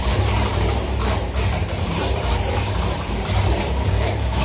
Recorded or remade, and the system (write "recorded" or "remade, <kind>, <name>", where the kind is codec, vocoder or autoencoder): remade, vocoder, BigVGAN v2